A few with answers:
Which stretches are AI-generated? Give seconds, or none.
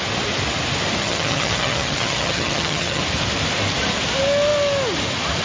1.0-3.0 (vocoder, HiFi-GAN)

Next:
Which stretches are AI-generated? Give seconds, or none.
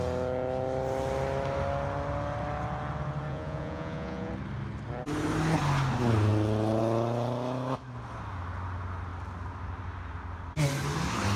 3.3-4.3 (vocoder, Vocos)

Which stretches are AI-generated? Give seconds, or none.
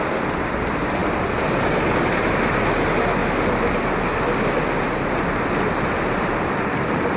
none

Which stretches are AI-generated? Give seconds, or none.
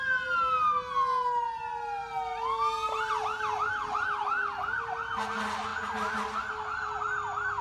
none